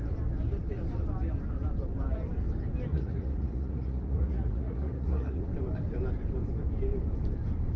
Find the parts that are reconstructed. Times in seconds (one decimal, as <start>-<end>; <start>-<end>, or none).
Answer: 2.9-5.5